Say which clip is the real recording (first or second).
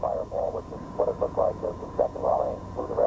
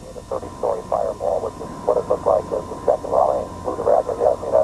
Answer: second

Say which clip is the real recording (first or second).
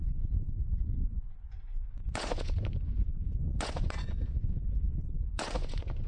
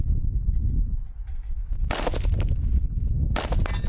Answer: second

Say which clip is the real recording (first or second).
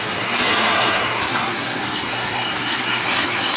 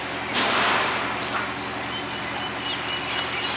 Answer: second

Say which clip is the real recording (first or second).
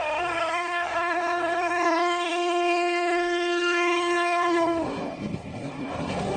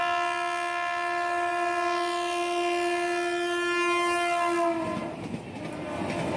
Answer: second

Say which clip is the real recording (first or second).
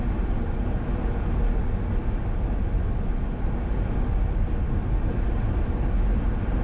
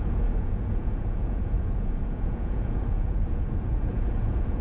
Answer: first